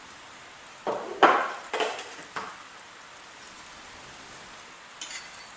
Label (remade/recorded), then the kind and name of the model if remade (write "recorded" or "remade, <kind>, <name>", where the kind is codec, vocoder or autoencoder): recorded